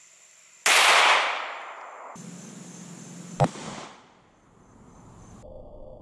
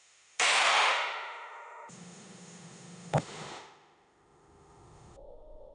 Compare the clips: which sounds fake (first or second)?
second